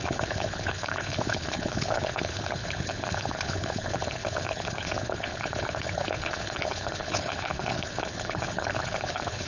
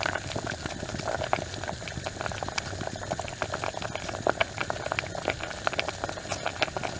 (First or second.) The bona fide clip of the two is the second